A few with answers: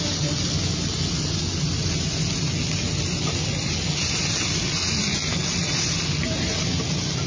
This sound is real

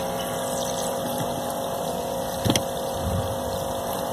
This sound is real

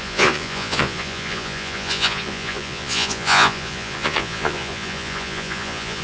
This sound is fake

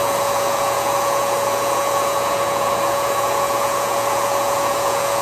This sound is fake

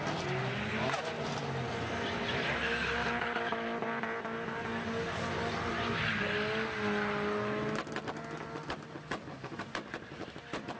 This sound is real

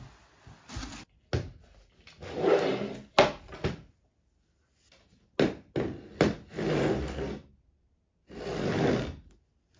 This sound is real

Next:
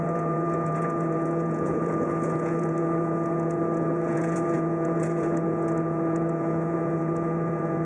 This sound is fake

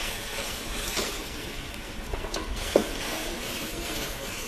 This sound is fake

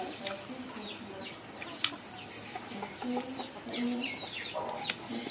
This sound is fake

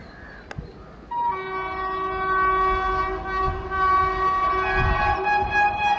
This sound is real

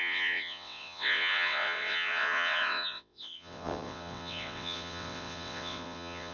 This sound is fake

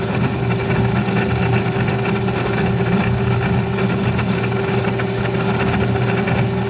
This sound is real